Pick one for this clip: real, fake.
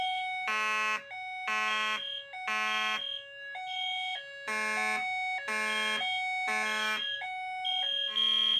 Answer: real